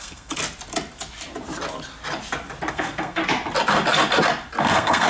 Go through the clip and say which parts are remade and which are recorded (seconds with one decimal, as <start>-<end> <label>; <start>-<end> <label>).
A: 0.0-0.4 remade; 0.4-2.7 recorded; 2.7-3.2 remade; 3.2-4.6 recorded; 4.6-5.1 remade